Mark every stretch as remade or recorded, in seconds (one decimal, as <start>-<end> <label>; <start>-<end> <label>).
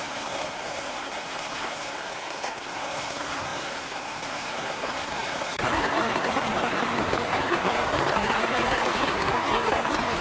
0.0-10.2 remade